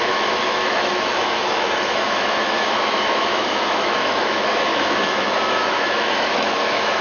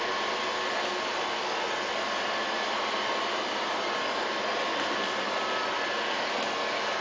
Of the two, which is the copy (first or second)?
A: first